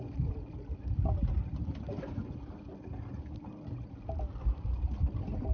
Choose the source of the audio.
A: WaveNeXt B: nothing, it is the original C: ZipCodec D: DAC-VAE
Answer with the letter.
B